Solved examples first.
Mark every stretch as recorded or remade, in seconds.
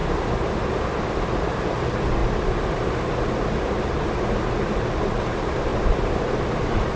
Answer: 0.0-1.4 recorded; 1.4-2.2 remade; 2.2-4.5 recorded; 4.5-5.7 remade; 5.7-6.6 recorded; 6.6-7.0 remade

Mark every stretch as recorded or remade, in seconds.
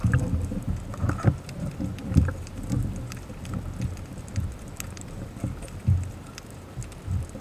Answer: 0.0-2.0 recorded; 2.0-5.8 remade; 5.8-7.4 recorded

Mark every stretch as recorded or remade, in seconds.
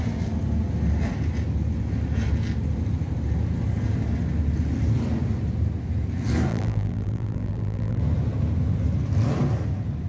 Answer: 0.0-6.5 recorded; 6.5-8.0 remade; 8.0-10.1 recorded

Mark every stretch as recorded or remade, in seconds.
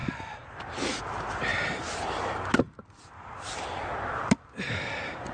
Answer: 0.0-1.0 remade; 1.0-5.3 recorded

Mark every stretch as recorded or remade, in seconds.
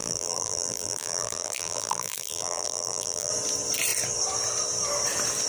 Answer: 0.0-3.3 remade; 3.3-5.5 recorded